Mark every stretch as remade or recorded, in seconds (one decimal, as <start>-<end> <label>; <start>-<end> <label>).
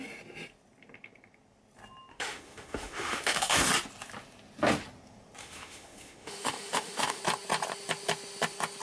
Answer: 0.0-2.1 recorded; 2.1-3.7 remade; 3.7-5.4 recorded; 5.4-7.2 remade; 7.2-8.8 recorded